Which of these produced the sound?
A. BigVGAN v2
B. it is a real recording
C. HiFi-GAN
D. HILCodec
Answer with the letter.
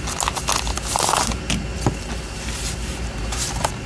B